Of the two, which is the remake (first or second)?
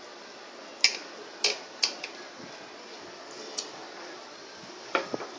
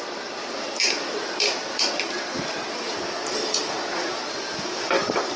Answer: second